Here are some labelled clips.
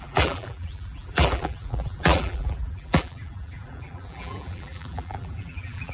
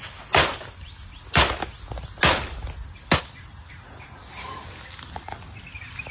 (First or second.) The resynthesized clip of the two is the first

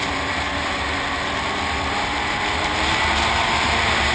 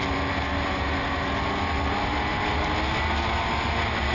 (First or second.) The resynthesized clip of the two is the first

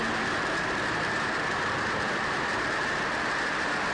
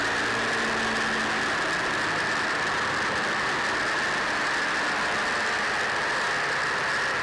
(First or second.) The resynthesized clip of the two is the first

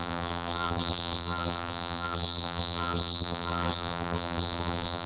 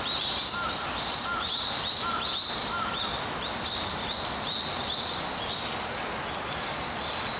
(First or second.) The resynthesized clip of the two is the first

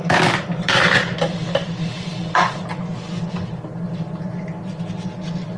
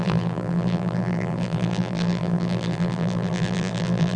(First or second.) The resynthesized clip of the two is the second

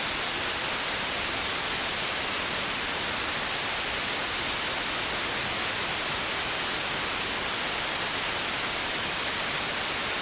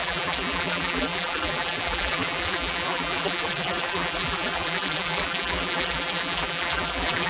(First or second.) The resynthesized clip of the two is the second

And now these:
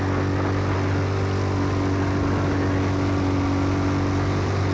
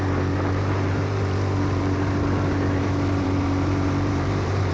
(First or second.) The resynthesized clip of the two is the second